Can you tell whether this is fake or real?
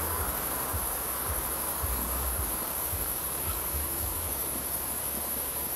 fake